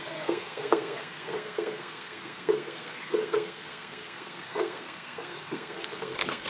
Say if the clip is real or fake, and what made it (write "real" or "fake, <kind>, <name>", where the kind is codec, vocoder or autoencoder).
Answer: fake, codec, SNAC